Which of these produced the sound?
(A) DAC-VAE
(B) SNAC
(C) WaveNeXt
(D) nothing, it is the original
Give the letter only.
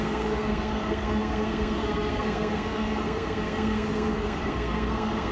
B